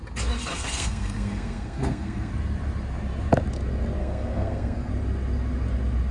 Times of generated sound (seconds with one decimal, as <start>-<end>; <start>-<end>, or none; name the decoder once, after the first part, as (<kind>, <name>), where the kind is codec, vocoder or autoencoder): 0.5-2.3 (codec, SNAC); 4.0-4.9